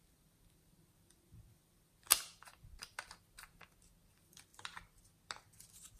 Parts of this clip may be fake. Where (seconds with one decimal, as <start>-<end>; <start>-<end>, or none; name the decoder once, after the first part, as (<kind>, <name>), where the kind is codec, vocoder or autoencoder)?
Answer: 0.0-2.1 (vocoder, BigVGAN v2); 4.1-4.5